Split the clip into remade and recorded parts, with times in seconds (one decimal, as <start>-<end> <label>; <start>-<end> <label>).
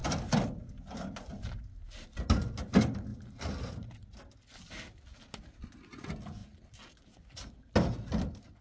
0.0-8.6 recorded